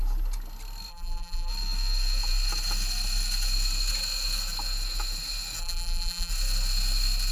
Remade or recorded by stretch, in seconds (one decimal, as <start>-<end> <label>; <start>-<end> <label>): 0.0-0.9 recorded; 0.9-1.5 remade; 1.5-5.6 recorded; 5.6-6.3 remade; 6.3-7.3 recorded

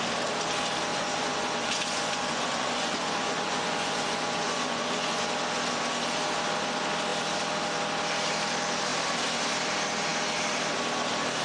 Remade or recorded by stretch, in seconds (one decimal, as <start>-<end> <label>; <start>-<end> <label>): 0.0-0.9 recorded; 0.9-5.3 remade; 5.3-11.4 recorded

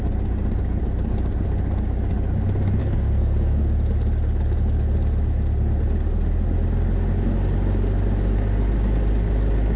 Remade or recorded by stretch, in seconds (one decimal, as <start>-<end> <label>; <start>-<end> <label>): 0.0-2.8 recorded; 2.8-3.6 remade; 3.6-9.8 recorded

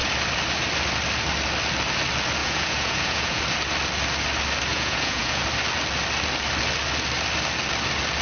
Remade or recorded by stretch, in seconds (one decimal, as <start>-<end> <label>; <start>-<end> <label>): 0.0-2.4 recorded; 2.4-3.4 remade; 3.4-4.7 recorded; 4.7-5.4 remade; 5.4-8.2 recorded

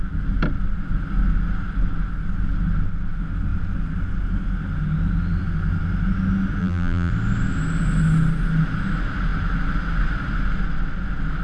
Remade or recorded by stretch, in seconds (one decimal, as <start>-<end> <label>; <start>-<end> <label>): 0.0-6.6 recorded; 6.6-7.1 remade; 7.1-11.4 recorded

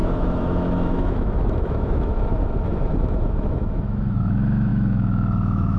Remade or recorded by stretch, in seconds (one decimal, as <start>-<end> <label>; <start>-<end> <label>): 0.0-5.8 remade